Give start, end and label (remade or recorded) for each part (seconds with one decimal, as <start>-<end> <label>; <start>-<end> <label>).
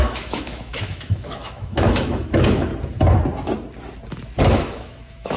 0.0-2.7 remade; 2.7-4.4 recorded; 4.4-5.4 remade